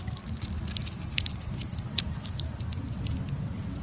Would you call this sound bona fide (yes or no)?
yes